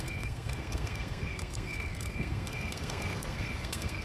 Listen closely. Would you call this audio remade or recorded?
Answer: remade